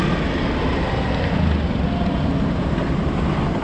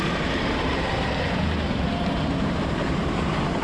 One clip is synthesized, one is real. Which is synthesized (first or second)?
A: second